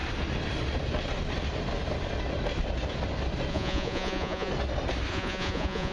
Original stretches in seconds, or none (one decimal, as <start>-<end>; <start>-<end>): 0.0-3.5; 4.5-5.1